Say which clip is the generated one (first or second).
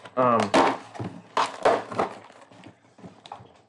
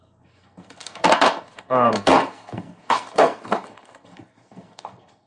second